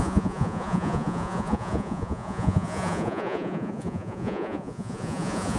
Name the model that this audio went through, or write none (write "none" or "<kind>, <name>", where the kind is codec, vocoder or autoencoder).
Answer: vocoder, Vocos